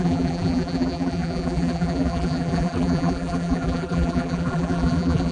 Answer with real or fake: fake